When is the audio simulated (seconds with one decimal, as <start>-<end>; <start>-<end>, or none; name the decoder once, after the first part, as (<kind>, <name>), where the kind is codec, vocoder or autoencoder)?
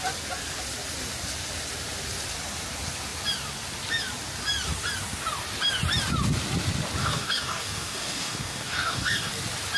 7.0-9.3 (codec, DAC)